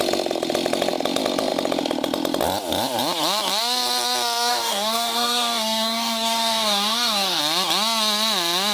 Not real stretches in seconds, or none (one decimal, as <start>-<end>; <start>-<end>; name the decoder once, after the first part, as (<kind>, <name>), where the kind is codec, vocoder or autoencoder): 4.5-7.4 (codec, DAC)